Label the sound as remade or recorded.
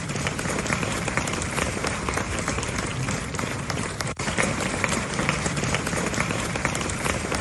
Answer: remade